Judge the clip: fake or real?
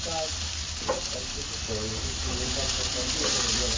real